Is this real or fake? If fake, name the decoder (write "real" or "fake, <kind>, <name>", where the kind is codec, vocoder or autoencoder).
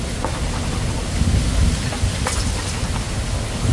real